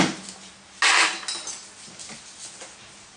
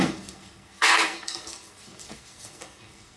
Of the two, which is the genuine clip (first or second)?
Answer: first